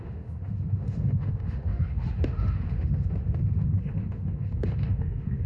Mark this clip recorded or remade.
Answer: remade